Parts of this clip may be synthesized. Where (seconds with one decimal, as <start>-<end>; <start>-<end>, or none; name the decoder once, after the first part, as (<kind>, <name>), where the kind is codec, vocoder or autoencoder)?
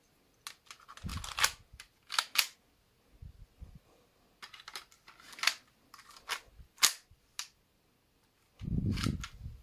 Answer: none